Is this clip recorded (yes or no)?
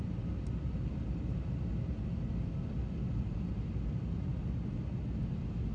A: yes